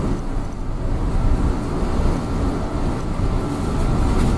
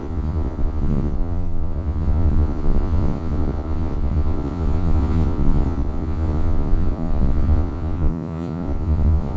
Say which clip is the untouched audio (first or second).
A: first